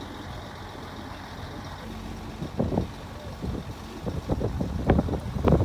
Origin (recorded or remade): recorded